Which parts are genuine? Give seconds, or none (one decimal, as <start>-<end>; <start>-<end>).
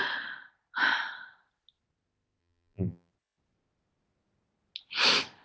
0.0-2.4; 3.1-5.4